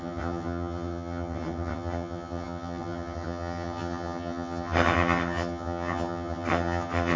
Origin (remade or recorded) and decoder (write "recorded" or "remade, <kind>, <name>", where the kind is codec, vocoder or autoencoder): remade, vocoder, HiFi-GAN